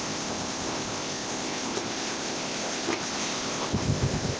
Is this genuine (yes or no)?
no